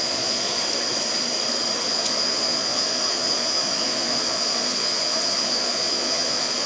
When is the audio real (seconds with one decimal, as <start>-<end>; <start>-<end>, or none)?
0.6-1.9